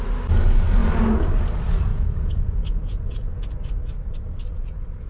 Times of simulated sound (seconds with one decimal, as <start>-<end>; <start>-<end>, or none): 1.9-3.7